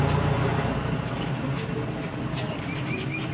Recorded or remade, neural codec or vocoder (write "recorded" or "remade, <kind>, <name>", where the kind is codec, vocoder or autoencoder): recorded